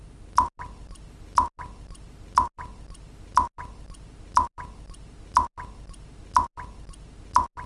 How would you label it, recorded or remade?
recorded